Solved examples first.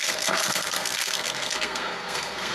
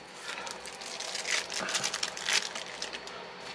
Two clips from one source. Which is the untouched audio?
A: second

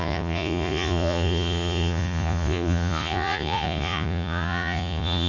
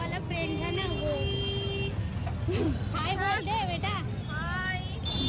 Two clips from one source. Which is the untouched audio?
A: second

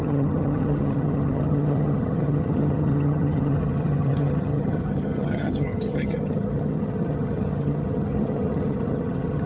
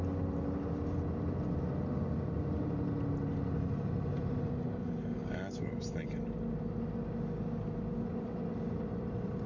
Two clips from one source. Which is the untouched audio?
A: second